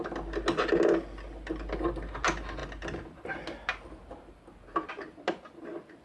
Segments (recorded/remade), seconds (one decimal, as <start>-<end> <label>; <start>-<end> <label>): 0.0-6.0 recorded